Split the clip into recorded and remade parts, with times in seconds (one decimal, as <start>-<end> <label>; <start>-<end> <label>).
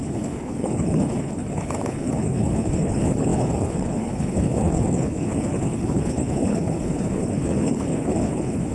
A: 0.0-8.7 remade